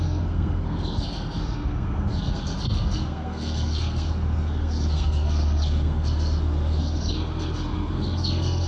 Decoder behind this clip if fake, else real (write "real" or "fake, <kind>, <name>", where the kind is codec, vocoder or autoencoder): fake, codec, SNAC